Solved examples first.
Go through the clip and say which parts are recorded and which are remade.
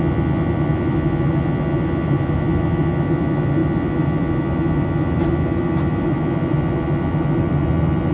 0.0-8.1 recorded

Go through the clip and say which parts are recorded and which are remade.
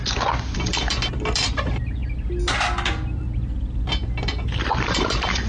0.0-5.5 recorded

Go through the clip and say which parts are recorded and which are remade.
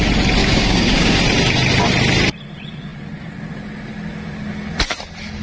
0.0-0.4 recorded; 0.4-1.2 remade; 1.2-5.4 recorded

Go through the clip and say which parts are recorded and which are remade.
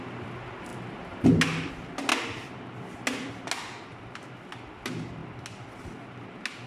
0.0-6.7 recorded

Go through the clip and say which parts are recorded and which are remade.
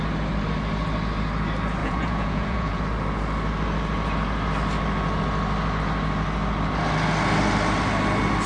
0.0-1.8 recorded; 1.8-2.8 remade; 2.8-8.5 recorded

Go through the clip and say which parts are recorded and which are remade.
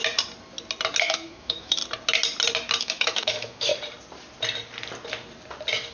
0.0-1.0 recorded; 1.0-1.8 remade; 1.8-2.8 recorded; 2.8-3.7 remade; 3.7-5.9 recorded